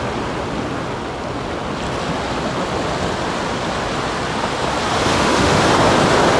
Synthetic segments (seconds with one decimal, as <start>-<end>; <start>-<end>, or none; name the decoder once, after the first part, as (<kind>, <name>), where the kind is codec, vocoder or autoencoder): 5.1-5.6 (autoencoder, DAC-VAE)